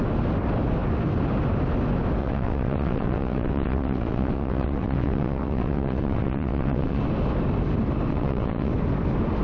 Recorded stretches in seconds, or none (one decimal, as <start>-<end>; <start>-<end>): 0.0-2.2; 7.0-8.1; 8.7-9.4